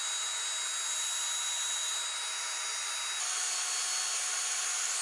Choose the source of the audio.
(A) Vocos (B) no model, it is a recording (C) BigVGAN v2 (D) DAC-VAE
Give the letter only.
B